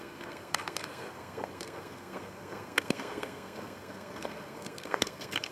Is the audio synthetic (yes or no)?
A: yes